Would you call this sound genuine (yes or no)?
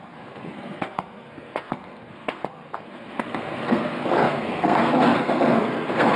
no